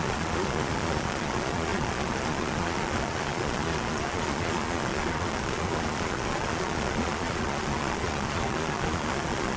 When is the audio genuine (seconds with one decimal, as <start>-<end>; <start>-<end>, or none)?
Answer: none